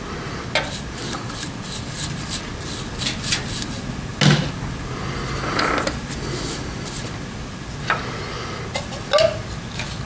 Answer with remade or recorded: recorded